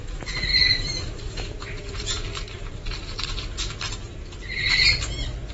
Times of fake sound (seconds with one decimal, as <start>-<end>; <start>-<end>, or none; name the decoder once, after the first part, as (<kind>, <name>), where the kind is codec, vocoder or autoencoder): 0.5-3.6 (vocoder, BigVGAN v2)

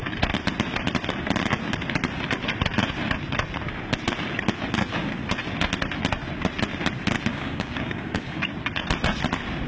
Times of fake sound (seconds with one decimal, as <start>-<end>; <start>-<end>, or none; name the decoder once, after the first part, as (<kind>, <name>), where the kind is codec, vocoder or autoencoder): 7.3-8.4 (codec, DAC)

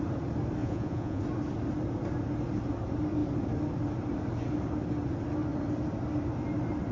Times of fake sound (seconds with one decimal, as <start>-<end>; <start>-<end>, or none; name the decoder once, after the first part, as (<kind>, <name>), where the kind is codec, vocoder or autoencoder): 0.6-1.2 (vocoder, Vocos)

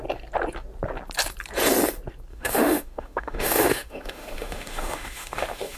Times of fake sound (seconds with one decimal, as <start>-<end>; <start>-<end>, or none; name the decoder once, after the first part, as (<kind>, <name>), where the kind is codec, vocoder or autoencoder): 2.3-5.8 (autoencoder, DAC-VAE)

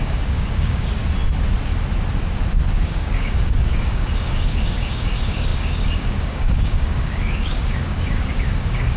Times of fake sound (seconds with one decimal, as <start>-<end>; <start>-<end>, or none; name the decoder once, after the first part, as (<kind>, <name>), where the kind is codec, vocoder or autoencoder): 0.0-1.0 (codec, DAC); 2.7-9.0

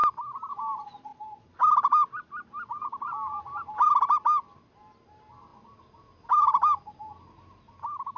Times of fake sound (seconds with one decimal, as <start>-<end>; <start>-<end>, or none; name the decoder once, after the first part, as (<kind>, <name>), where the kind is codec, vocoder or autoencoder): none

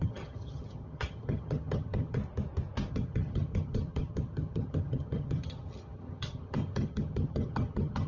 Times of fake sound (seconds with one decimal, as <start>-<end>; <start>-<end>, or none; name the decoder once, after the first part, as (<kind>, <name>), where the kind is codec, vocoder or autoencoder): 0.0-2.2 (vocoder, HiFi-GAN); 2.9-8.1

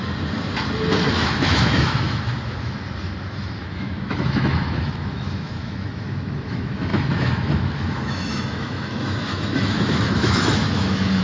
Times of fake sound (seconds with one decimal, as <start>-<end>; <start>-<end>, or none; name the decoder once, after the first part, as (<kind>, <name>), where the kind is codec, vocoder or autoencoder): 1.1-11.2 (autoencoder, DAC-VAE)